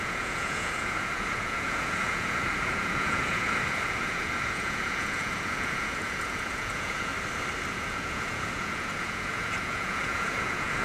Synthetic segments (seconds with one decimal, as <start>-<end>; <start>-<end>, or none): 0.0-7.1; 7.7-10.8